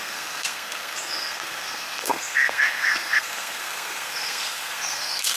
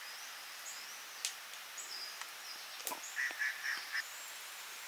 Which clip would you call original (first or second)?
second